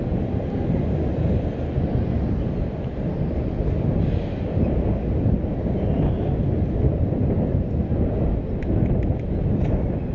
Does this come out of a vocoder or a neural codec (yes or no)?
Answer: no